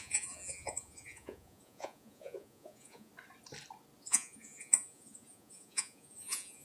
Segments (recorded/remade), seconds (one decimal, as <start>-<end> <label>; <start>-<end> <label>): 0.0-3.1 remade; 3.1-4.0 recorded; 4.0-6.6 remade